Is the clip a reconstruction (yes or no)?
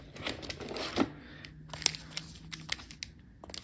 no